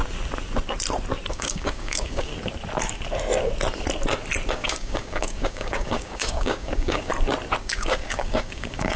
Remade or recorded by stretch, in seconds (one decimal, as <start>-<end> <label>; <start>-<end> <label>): 0.0-1.3 recorded; 1.3-2.3 remade; 2.3-4.5 recorded; 4.5-7.1 remade; 7.1-7.6 recorded; 7.6-9.0 remade